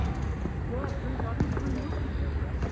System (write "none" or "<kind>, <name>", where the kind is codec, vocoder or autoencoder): none